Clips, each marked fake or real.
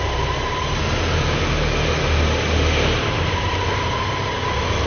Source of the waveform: real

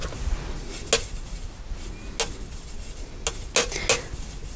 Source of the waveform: real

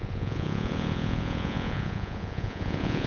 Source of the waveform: fake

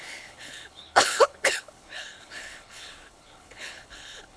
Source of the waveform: fake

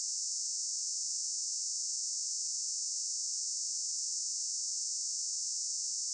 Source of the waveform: fake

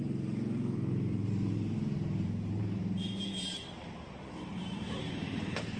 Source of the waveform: fake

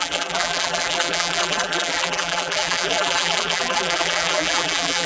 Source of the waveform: fake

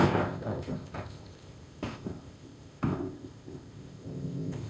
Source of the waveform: fake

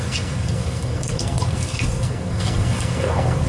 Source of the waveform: fake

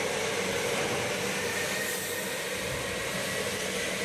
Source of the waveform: real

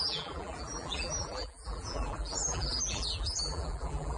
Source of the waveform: fake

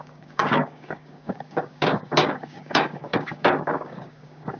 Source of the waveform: fake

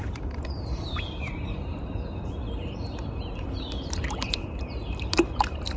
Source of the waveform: fake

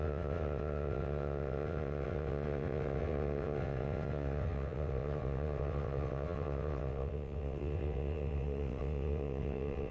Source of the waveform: fake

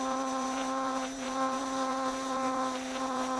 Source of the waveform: fake